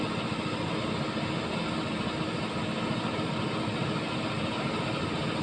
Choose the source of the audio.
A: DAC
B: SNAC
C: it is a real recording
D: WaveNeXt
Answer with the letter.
C